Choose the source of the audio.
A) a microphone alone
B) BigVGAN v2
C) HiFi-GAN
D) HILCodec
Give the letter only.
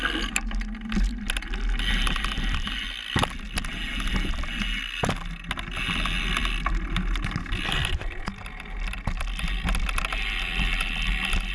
A